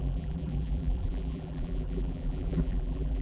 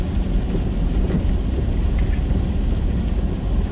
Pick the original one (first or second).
second